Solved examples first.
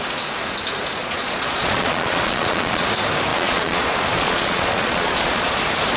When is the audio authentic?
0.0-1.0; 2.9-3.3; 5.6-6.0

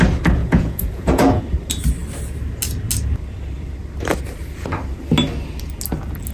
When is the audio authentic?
0.0-0.4; 1.4-6.3